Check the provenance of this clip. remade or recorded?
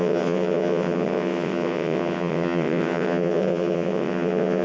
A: remade